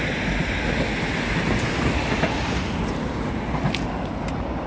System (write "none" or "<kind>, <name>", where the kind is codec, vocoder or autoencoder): none